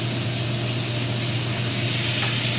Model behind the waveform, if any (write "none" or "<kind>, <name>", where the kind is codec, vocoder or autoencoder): none